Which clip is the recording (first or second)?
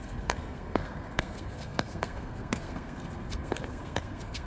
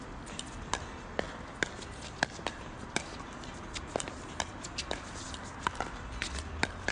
second